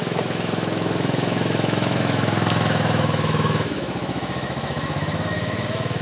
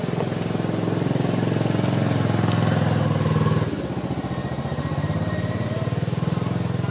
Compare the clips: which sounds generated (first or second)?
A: first